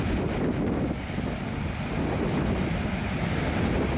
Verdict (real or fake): real